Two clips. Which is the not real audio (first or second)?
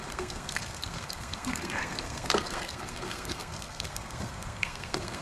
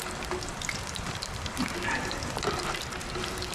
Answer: first